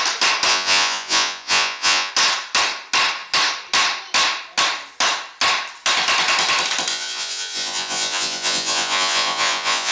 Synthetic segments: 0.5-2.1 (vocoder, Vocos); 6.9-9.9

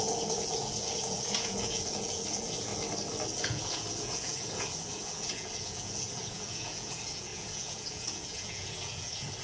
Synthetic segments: 0.0-2.7 (vocoder, Vocos); 3.4-9.4

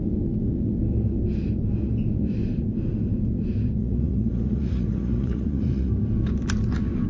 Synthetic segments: 3.8-5.9 (vocoder, Vocos)

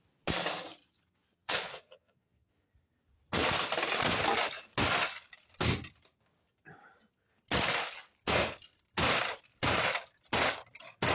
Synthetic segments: 0.8-2.5 (vocoder, Vocos)

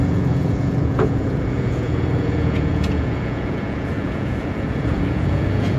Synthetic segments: 0.0-5.8 (vocoder, Vocos)

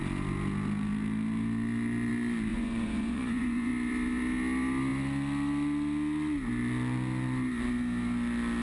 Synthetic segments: 2.5-3.7 (vocoder, Vocos)